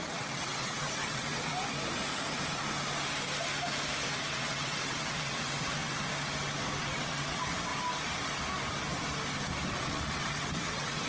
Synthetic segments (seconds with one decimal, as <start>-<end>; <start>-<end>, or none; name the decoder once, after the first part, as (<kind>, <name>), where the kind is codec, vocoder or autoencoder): 0.0-1.5 (vocoder, WaveNeXt); 4.1-6.0; 6.8-7.7; 9.8-11.1